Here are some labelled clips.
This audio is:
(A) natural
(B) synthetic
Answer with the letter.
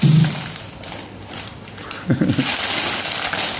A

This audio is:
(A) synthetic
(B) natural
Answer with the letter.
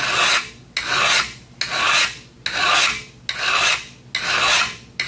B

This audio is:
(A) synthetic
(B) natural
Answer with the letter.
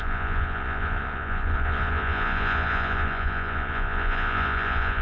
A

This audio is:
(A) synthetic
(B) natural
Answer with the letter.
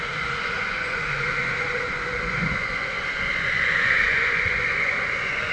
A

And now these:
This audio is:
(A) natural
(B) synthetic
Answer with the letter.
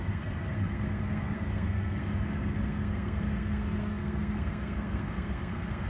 B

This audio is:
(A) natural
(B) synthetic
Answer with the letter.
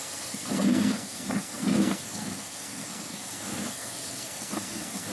B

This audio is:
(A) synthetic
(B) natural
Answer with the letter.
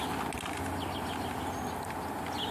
B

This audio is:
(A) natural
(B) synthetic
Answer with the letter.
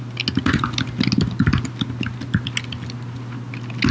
A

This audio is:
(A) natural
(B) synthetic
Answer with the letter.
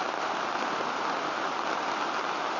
A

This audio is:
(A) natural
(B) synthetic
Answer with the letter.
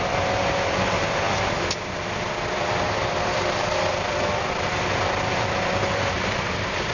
B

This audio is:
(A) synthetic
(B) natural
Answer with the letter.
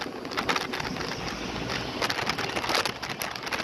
B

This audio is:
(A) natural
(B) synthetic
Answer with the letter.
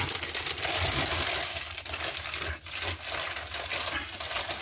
A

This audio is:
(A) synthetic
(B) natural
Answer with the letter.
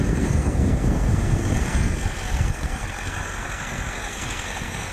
A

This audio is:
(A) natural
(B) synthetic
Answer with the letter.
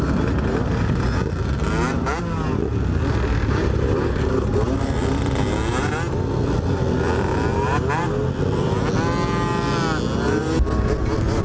A